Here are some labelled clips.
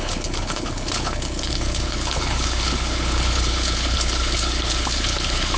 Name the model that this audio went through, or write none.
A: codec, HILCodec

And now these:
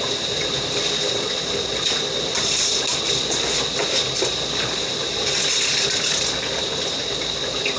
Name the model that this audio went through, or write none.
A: none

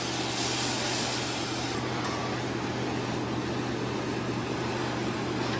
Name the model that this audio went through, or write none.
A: none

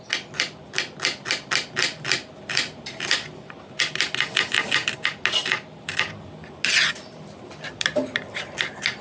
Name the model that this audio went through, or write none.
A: none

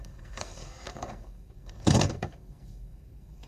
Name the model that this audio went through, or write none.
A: codec, SNAC